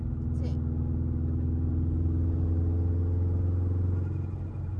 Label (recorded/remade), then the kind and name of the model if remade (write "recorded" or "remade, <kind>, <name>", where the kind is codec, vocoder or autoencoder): recorded